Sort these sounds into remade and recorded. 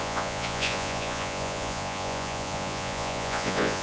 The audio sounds remade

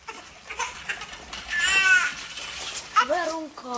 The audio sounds recorded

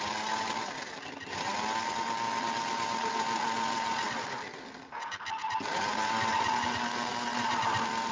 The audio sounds recorded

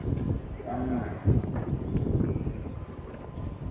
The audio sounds recorded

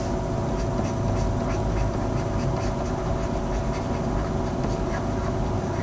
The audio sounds recorded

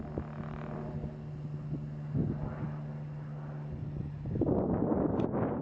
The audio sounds recorded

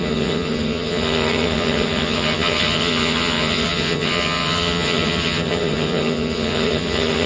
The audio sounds remade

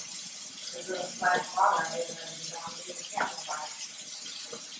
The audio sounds recorded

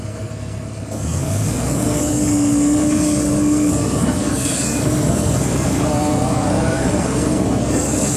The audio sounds remade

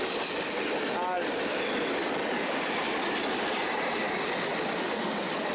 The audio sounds recorded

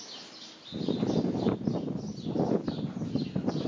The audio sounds recorded